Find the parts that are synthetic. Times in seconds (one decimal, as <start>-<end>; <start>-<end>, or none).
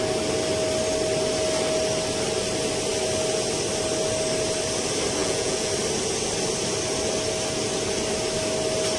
5.2-5.7